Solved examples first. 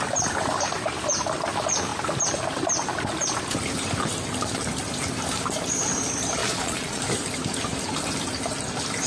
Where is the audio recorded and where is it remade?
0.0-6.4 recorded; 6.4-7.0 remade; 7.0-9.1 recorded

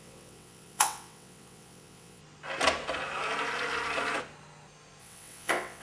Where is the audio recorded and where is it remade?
0.0-2.2 remade; 2.2-5.0 recorded; 5.0-5.8 remade